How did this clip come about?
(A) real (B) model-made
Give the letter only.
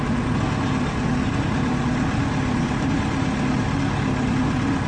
A